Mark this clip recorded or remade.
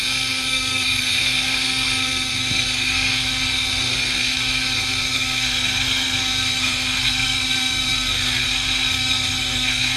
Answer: remade